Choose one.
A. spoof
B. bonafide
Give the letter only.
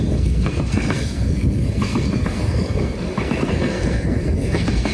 A